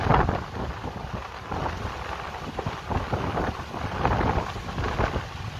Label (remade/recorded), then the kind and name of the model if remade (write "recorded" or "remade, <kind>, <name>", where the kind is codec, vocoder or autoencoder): recorded